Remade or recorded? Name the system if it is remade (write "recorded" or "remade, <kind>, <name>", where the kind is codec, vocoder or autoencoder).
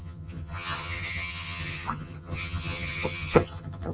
remade, vocoder, HiFi-GAN